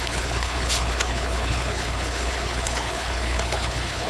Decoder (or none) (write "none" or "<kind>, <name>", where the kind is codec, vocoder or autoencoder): codec, HILCodec